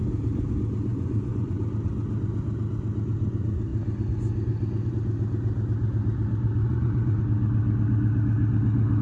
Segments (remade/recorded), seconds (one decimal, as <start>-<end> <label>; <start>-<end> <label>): 0.0-0.9 recorded; 0.9-1.6 remade; 1.6-6.6 recorded; 6.6-7.2 remade; 7.2-9.0 recorded